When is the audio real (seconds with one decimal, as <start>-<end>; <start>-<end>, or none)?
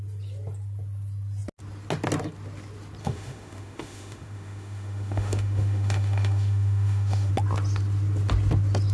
0.0-3.0; 7.3-8.9